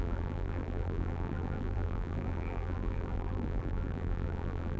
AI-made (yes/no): yes